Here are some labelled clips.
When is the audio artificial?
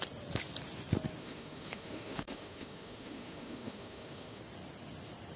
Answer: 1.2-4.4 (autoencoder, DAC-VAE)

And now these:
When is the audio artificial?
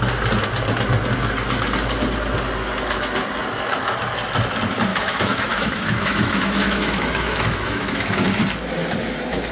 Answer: 4.9-8.4 (autoencoder, DAC-VAE)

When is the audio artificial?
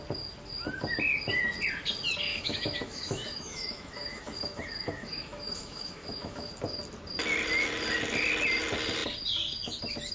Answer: 2.3-6.5 (autoencoder, DAC-VAE)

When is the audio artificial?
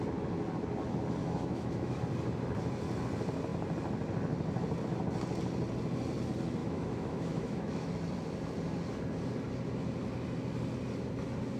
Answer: 1.2-2.0 (autoencoder, DAC-VAE); 6.6-7.9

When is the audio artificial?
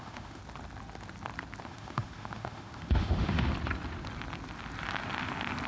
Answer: 0.0-0.4 (autoencoder, DAC-VAE); 1.6-3.5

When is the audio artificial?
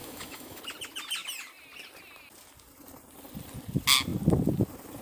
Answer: 0.0-0.6 (autoencoder, DAC-VAE)